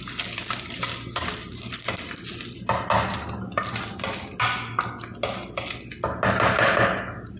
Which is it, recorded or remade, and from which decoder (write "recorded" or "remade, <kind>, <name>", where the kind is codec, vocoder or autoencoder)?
recorded